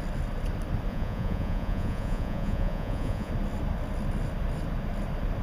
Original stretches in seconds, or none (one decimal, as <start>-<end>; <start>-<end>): 0.0-0.9; 3.3-5.4